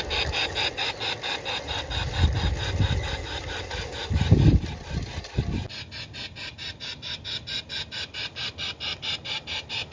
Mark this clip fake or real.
real